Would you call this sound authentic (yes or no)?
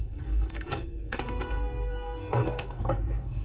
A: no